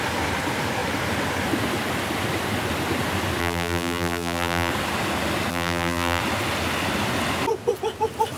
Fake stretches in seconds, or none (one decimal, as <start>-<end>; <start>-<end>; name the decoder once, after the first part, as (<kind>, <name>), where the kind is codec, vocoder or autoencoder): 3.4-4.7 (vocoder, BigVGAN v2); 5.5-6.2